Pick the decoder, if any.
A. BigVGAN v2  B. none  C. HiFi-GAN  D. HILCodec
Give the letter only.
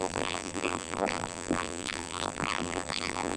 A